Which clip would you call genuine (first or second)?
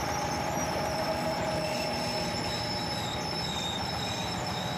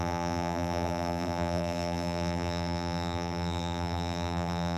first